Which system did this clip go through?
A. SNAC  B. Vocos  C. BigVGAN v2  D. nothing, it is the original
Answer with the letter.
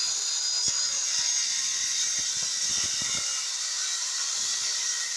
D